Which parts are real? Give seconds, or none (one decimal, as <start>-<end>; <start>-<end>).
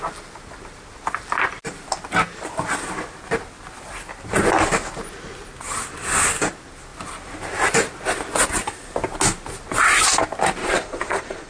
0.0-10.6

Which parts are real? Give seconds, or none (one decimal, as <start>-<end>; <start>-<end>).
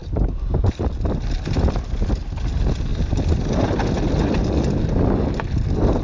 0.9-2.9; 5.0-6.0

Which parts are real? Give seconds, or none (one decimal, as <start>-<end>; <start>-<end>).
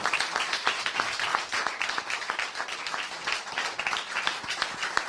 0.0-5.1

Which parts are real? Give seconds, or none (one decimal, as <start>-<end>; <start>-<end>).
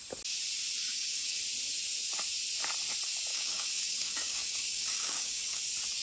0.0-0.8; 1.4-3.3; 5.6-6.0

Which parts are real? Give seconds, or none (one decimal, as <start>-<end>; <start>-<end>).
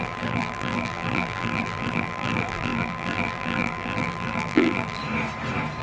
5.0-5.8